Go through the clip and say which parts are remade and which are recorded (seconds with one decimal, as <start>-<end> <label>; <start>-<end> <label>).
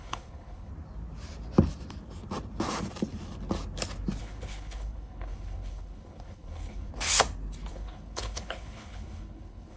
0.0-0.7 remade; 0.7-4.2 recorded; 4.2-6.9 remade; 6.9-7.7 recorded; 7.7-9.8 remade